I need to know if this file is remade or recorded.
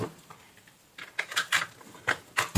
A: recorded